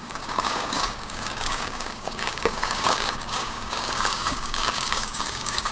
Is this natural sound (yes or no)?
no